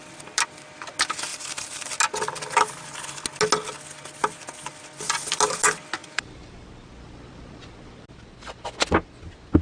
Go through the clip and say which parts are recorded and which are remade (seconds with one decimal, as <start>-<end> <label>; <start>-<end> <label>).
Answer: 0.0-1.3 recorded; 1.3-1.9 remade; 1.9-6.0 recorded; 6.0-6.7 remade; 6.7-9.6 recorded